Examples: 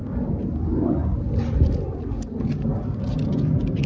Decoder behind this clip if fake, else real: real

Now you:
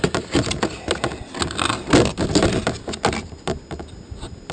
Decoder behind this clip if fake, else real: real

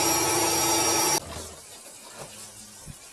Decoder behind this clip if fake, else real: real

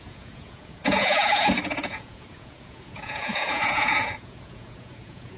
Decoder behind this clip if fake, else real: fake, vocoder, Vocos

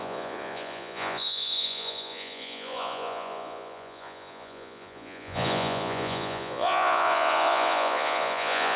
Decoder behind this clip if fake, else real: fake, vocoder, Vocos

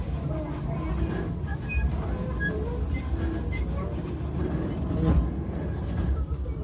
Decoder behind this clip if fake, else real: real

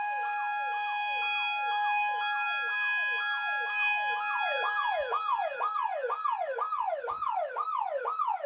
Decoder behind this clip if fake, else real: real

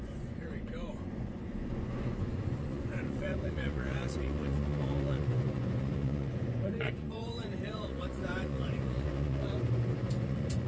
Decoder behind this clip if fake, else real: fake, vocoder, Vocos